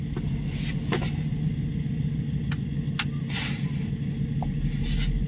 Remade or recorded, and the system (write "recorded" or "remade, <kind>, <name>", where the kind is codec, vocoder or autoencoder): recorded